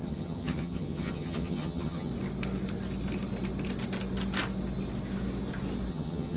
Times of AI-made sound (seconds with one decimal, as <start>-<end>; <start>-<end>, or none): 0.0-2.1; 5.9-6.4